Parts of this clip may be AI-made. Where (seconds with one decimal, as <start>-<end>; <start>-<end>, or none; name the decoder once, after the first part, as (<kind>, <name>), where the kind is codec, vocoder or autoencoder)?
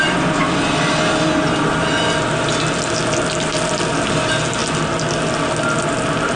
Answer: none